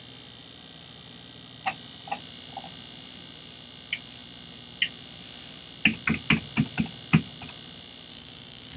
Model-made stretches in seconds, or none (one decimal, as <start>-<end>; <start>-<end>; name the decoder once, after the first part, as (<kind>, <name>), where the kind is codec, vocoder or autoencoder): 8.1-8.8 (codec, DAC)